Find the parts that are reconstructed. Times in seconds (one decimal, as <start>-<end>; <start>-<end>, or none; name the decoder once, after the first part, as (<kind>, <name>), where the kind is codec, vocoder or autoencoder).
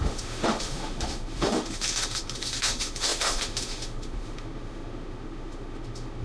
0.0-6.2 (autoencoder, DAC-VAE)